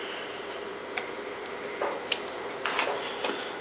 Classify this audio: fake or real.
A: real